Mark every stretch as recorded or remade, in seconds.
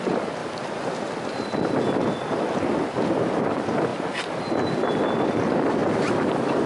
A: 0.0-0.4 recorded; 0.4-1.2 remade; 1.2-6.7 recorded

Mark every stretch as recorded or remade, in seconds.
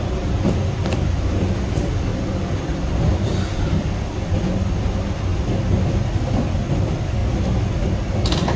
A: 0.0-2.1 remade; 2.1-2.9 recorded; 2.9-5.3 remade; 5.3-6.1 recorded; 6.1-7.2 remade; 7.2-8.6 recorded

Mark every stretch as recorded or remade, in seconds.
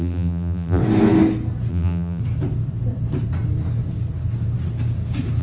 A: 0.0-0.8 remade; 0.8-1.7 recorded; 1.7-2.2 remade; 2.2-5.4 recorded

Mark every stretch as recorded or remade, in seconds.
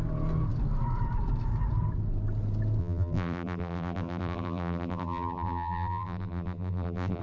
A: 0.0-2.8 recorded; 2.8-7.2 remade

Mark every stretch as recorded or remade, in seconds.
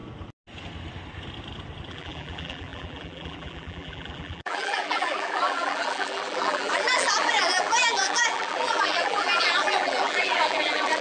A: 0.0-1.9 recorded; 1.9-11.0 remade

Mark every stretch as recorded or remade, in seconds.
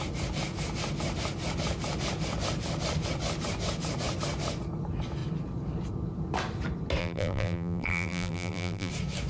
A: 0.0-7.0 recorded; 7.0-8.9 remade; 8.9-9.3 recorded